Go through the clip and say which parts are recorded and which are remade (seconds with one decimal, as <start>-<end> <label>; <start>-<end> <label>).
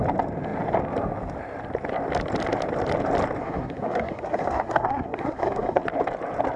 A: 0.0-3.4 recorded; 3.4-5.8 remade; 5.8-6.6 recorded